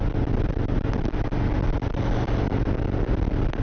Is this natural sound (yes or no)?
yes